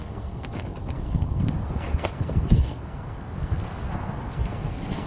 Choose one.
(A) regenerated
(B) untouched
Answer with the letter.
A